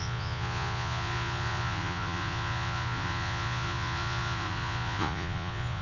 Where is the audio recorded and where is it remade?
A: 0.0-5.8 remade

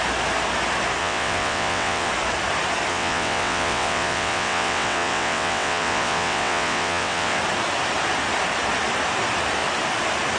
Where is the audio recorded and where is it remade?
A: 0.0-1.0 recorded; 1.0-2.1 remade; 2.1-2.9 recorded; 2.9-7.4 remade; 7.4-10.4 recorded